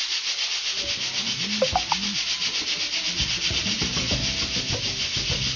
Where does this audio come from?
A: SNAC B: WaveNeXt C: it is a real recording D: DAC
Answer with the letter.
C